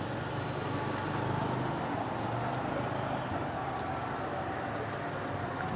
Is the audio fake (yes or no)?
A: no